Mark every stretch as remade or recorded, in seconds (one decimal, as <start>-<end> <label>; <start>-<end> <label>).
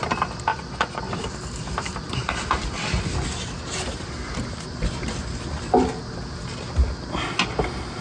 0.0-0.5 recorded; 0.5-1.0 remade; 1.0-8.0 recorded